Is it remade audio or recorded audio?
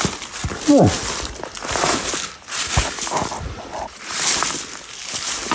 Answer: recorded